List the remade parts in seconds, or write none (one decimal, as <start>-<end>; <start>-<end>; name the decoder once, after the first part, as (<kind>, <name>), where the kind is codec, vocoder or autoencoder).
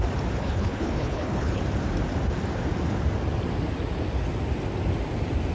0.4-1.6 (codec, HILCodec)